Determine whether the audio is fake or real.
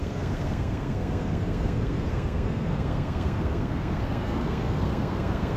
fake